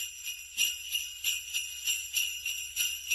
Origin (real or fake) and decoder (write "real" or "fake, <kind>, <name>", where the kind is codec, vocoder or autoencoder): real